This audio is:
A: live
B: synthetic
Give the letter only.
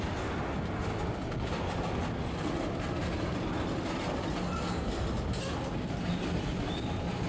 A